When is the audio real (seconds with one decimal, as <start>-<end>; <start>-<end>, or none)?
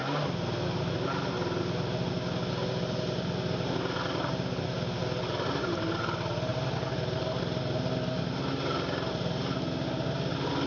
0.0-10.7